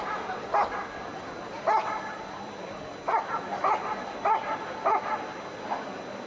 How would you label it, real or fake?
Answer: real